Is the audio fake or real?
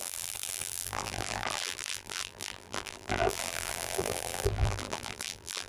fake